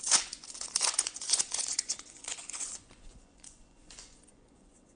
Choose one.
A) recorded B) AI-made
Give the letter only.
B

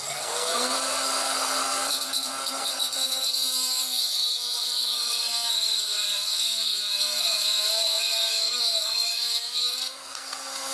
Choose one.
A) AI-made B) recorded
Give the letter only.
A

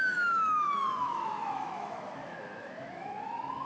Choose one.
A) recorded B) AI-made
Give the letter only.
B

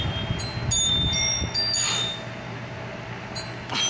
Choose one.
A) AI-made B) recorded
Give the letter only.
B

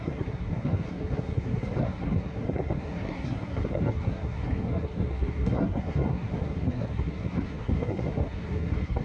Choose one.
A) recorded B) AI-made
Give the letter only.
B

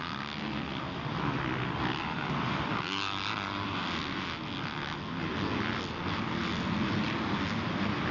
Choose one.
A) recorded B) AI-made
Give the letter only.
A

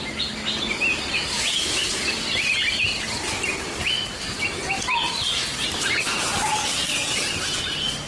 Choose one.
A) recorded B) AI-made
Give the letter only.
A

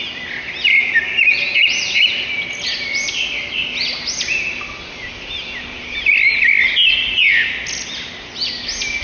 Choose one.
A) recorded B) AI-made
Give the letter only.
A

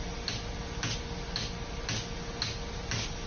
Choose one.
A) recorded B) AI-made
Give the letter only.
A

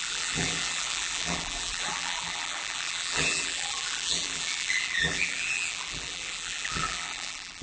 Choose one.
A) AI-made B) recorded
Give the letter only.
A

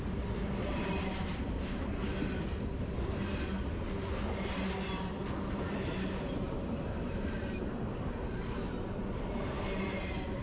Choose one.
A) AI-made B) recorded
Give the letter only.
B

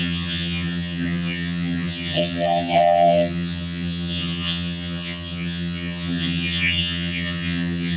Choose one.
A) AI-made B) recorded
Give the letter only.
A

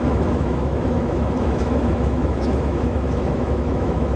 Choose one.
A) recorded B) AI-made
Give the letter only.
B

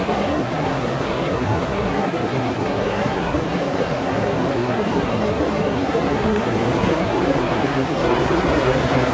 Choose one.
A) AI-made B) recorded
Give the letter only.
A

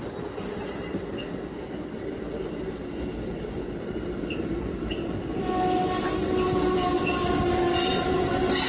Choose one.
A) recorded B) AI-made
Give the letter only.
A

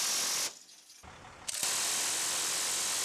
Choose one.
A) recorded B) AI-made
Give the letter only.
A